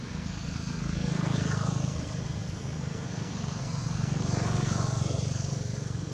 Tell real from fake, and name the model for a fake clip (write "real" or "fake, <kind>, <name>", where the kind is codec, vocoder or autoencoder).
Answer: fake, codec, SNAC